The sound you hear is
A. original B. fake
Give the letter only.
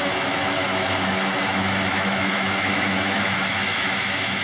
B